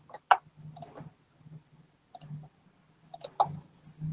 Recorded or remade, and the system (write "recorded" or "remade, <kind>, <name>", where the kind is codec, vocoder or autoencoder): recorded